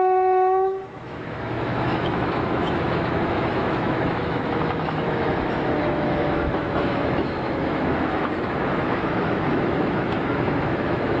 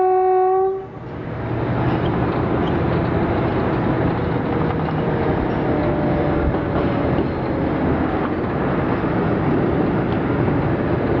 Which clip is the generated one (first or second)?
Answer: first